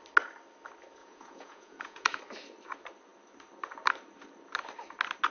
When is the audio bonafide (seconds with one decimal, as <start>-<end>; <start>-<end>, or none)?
0.0-1.0; 2.2-5.3